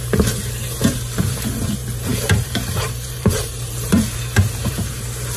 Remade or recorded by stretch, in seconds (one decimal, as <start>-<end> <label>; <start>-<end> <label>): 0.0-5.4 remade